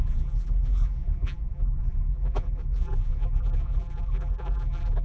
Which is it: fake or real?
fake